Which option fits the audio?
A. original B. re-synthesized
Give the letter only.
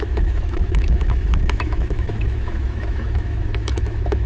B